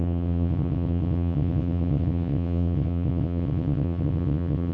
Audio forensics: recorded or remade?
remade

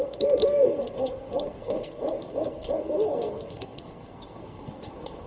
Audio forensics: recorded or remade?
remade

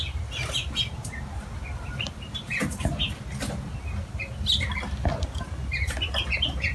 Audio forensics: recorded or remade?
recorded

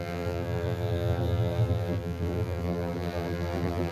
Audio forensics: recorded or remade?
remade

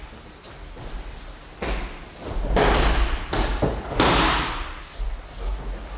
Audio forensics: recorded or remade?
recorded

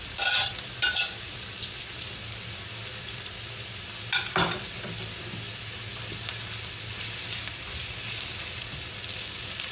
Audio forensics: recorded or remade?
recorded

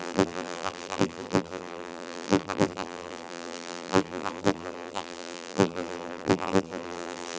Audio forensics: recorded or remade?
remade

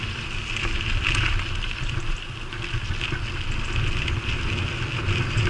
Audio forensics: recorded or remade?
recorded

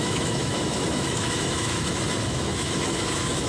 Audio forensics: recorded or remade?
remade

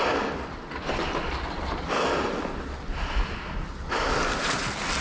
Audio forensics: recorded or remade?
recorded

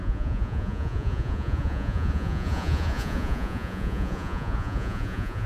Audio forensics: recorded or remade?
remade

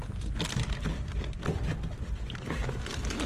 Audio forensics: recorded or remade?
recorded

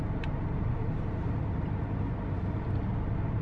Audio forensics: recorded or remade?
recorded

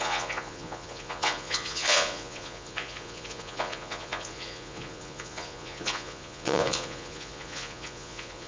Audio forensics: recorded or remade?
remade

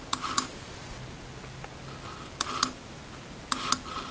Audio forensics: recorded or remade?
recorded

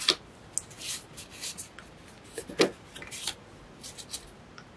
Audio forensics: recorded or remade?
recorded